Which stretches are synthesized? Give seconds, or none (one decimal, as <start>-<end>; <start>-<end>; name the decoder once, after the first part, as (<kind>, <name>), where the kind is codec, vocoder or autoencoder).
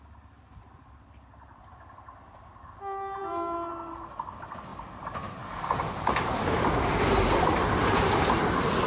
4.7-8.9 (vocoder, BigVGAN v2)